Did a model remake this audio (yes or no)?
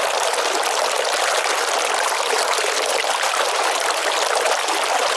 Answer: no